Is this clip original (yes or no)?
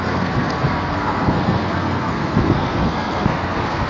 no